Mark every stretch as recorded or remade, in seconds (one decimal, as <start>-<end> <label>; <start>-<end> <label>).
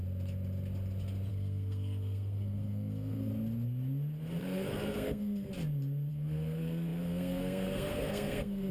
0.0-1.3 recorded; 1.3-3.3 remade; 3.3-4.4 recorded; 4.4-5.5 remade; 5.5-6.1 recorded; 6.1-8.7 remade